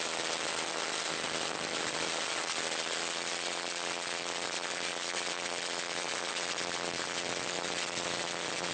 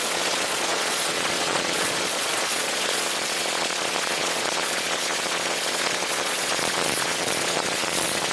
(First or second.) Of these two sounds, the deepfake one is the second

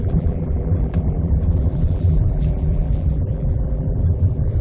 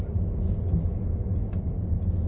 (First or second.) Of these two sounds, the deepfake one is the first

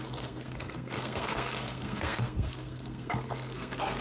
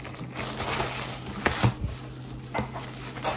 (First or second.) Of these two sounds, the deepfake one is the first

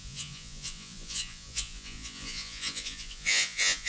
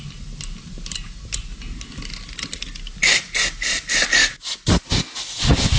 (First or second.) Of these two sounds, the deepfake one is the first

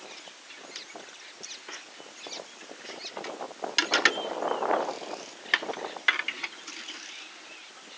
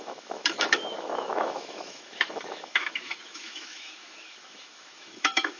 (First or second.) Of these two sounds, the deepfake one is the second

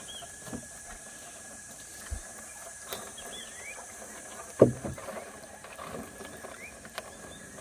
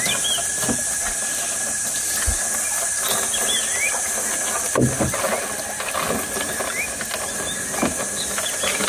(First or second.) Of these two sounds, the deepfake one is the first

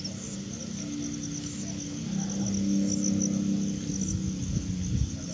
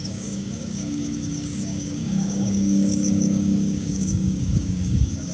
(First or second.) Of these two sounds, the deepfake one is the second